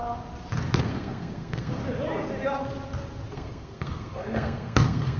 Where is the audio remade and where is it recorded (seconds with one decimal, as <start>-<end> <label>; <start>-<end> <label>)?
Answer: 0.0-0.8 recorded; 0.8-1.8 remade; 1.8-3.3 recorded; 3.3-5.2 remade